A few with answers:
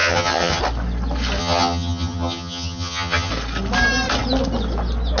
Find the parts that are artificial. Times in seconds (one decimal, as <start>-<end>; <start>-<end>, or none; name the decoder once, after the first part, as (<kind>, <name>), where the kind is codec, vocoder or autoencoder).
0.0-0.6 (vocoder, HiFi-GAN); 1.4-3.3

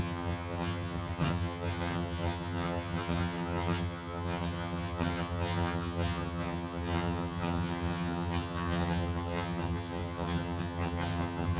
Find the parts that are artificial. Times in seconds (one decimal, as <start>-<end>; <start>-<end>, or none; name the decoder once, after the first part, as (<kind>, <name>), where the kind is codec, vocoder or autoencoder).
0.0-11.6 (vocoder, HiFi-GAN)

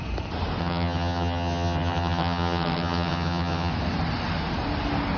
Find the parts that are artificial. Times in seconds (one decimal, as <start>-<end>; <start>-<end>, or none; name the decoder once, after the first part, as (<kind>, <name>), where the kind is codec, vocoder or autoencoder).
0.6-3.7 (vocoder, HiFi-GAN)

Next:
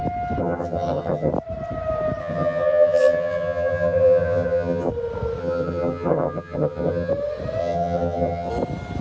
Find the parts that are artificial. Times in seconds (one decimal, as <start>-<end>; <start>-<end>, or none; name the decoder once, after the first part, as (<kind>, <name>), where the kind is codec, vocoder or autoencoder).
0.4-1.3 (vocoder, HiFi-GAN); 2.2-4.9; 5.4-7.1; 7.6-8.5

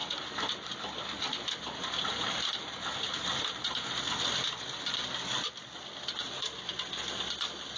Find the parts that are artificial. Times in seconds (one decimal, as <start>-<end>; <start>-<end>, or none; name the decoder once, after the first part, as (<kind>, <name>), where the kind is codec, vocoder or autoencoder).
none

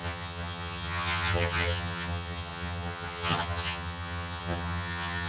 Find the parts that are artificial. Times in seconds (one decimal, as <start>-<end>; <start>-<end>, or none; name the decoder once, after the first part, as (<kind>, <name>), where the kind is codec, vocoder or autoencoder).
0.0-5.3 (vocoder, HiFi-GAN)